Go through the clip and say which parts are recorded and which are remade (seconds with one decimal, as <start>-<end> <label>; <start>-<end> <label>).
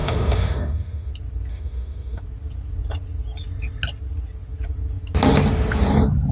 0.0-1.1 remade; 1.1-1.5 recorded; 1.5-2.2 remade; 2.2-6.3 recorded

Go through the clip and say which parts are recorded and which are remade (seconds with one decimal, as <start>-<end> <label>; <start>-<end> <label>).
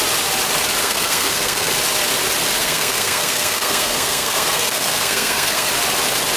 0.0-0.8 recorded; 0.8-1.7 remade; 1.7-2.6 recorded; 2.6-5.7 remade; 5.7-6.4 recorded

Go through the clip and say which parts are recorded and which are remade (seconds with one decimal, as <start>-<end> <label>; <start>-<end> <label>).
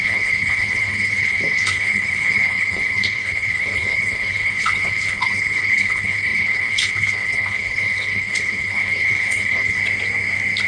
0.0-9.8 remade; 9.8-10.7 recorded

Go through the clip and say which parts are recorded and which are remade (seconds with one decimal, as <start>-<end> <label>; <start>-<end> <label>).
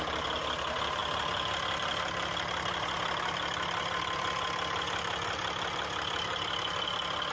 0.0-7.3 recorded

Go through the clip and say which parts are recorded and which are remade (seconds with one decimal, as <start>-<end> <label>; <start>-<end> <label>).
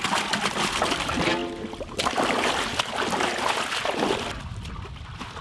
0.0-5.4 recorded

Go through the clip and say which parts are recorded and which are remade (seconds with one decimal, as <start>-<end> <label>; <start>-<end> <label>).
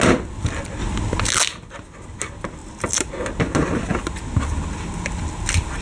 0.0-5.8 recorded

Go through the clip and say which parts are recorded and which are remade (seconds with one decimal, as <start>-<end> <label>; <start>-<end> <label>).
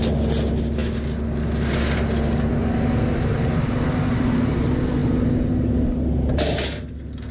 0.0-7.3 recorded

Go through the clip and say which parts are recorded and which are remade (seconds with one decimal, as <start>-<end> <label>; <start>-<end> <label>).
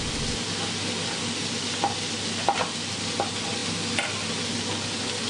0.0-5.3 recorded